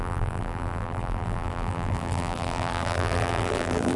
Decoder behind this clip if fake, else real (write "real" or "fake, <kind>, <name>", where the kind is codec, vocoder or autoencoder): fake, vocoder, BigVGAN v2